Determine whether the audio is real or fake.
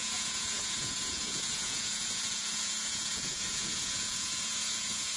fake